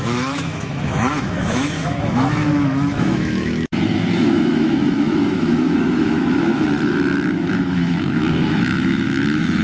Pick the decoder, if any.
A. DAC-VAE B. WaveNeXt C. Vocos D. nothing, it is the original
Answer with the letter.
A